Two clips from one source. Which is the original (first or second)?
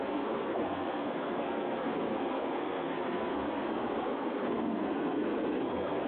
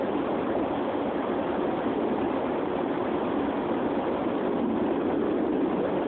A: second